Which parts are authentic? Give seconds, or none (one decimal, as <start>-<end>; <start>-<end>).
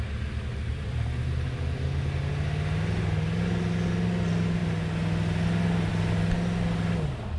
0.0-0.5; 1.6-7.4